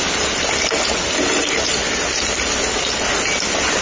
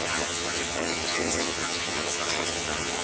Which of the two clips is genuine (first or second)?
first